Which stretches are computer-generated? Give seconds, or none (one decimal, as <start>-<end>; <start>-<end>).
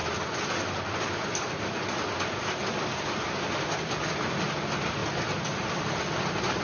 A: none